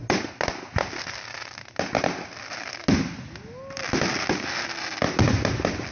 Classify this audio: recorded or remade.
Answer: recorded